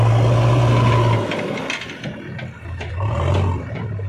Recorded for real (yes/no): yes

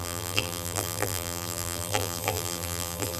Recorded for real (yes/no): no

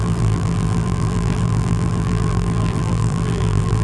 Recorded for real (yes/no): no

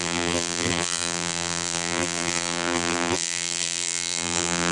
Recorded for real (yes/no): no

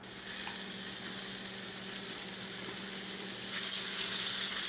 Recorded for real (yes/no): yes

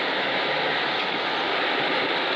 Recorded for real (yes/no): yes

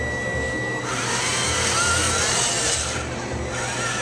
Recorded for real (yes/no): yes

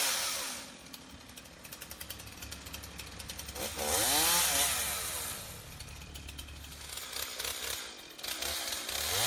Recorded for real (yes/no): yes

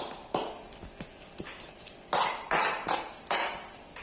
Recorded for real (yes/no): yes